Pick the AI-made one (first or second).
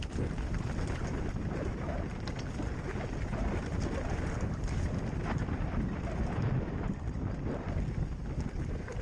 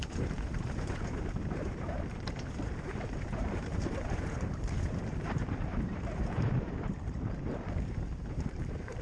second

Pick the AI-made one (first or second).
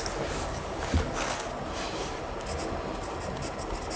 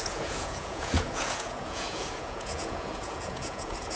second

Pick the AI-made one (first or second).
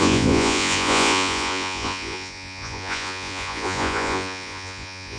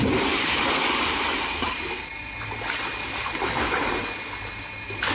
first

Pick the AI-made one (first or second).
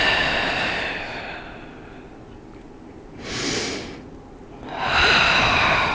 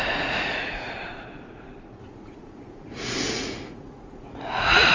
second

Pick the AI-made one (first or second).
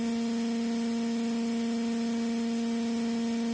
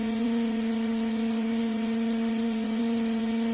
second